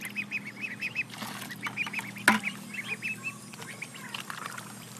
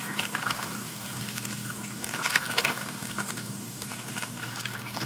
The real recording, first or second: first